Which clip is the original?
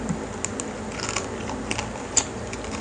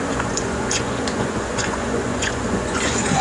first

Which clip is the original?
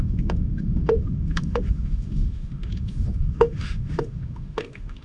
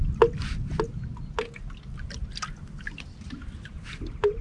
second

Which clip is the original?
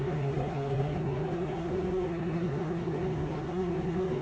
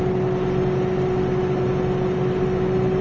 second